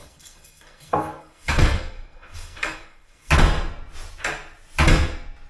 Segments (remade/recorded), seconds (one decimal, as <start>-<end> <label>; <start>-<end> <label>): 0.0-3.3 remade; 3.3-5.5 recorded